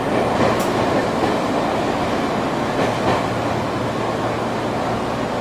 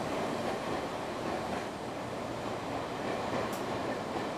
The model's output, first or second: second